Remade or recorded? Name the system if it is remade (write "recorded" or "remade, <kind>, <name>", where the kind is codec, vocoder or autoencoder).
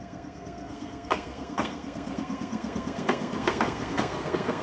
remade, codec, SNAC